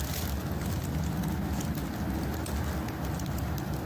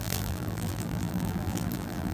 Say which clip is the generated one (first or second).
second